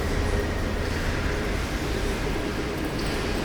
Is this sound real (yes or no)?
no